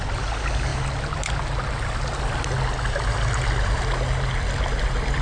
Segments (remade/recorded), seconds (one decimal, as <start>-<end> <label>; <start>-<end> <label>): 0.0-5.2 recorded